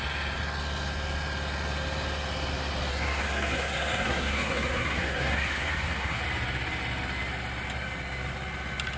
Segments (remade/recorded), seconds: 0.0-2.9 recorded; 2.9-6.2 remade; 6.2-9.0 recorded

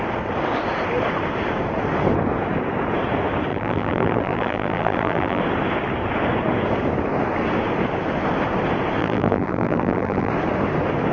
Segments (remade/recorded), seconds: 0.0-3.5 recorded; 3.5-5.4 remade; 5.4-9.0 recorded; 9.0-10.3 remade; 10.3-11.1 recorded